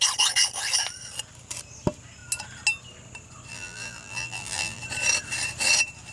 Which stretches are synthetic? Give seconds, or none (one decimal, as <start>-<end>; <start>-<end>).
3.5-4.8

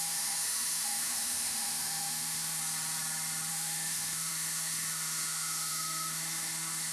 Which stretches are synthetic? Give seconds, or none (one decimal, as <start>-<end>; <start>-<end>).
0.0-2.6; 3.5-6.9

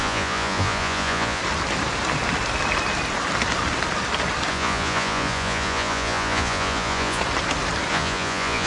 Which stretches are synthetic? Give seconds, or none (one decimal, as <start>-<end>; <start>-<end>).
0.0-1.4; 4.5-7.2; 7.9-8.7

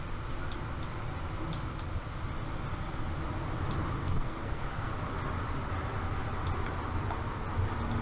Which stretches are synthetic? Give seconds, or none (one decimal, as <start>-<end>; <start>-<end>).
4.0-4.9

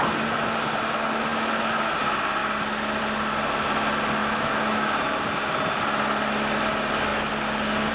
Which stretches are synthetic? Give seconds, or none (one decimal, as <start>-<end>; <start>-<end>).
1.3-1.8; 4.2-5.1

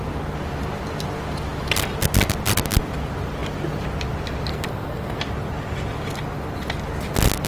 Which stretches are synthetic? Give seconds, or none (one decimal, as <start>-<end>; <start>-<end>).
4.5-5.2

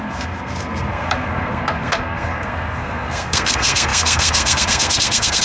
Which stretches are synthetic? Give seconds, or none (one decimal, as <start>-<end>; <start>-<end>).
0.0-5.4